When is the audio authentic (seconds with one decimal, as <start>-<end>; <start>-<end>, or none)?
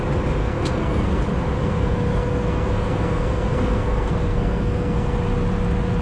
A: 0.0-0.4; 1.2-1.6; 5.2-6.0